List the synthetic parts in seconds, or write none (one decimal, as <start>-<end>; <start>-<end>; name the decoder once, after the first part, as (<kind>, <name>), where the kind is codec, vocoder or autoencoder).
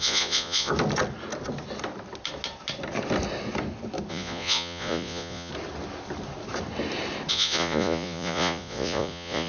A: 0.0-0.7 (vocoder, Vocos); 4.1-5.5; 7.3-9.5